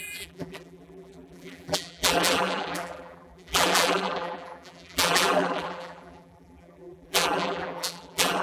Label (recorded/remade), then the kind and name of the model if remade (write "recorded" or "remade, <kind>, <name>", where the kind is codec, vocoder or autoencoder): remade, vocoder, BigVGAN v2